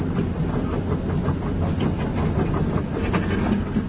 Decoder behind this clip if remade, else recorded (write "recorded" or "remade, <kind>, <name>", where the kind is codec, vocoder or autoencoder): recorded